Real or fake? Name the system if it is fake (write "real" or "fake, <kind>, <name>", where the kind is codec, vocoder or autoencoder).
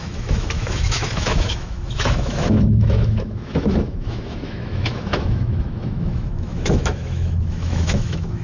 fake, autoencoder, DAC-VAE